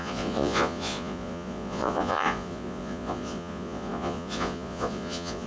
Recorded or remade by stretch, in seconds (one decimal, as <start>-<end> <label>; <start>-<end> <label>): 0.0-5.5 remade